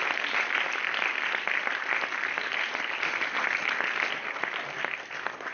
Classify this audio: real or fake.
real